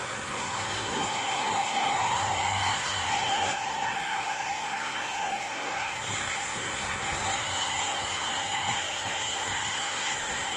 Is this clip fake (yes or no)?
yes